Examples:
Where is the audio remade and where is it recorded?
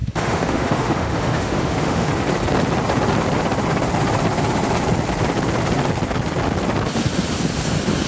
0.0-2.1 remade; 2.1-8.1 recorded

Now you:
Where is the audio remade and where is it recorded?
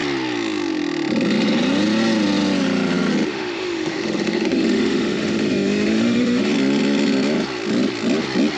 0.0-3.3 recorded; 3.3-6.5 remade; 6.5-8.6 recorded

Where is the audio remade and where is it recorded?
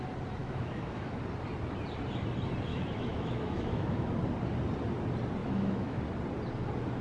0.0-0.4 recorded; 0.4-1.2 remade; 1.2-2.7 recorded; 2.7-4.1 remade; 4.1-5.4 recorded; 5.4-6.0 remade; 6.0-7.0 recorded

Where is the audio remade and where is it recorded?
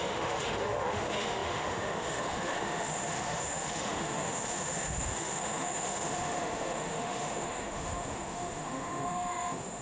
0.0-9.8 remade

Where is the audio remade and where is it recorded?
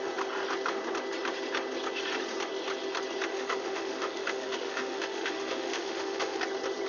0.0-3.3 recorded; 3.3-6.4 remade; 6.4-6.9 recorded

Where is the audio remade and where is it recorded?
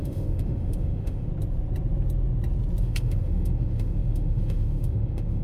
0.0-1.3 remade; 1.3-2.8 recorded; 2.8-5.4 remade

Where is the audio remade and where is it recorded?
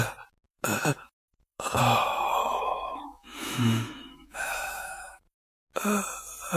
0.0-0.5 recorded; 0.5-1.8 remade; 1.8-2.4 recorded; 2.4-5.6 remade; 5.6-6.6 recorded